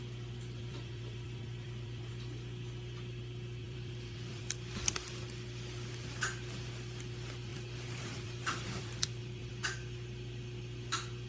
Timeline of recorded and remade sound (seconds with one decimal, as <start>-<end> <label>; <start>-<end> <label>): 0.0-0.6 recorded; 0.6-2.1 remade; 2.1-3.6 recorded; 3.6-4.4 remade; 4.4-7.5 recorded; 7.5-9.5 remade; 9.5-11.3 recorded